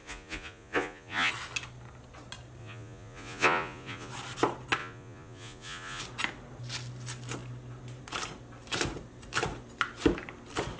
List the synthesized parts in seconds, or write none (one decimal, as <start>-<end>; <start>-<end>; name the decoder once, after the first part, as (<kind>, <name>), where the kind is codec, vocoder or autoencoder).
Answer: 0.0-1.3 (vocoder, Vocos); 2.6-4.1; 4.8-6.0